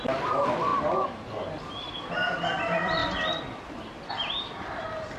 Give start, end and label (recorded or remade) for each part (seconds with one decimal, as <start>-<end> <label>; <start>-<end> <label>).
0.0-0.7 remade; 0.7-1.6 recorded; 1.6-3.0 remade; 3.0-4.1 recorded; 4.1-5.2 remade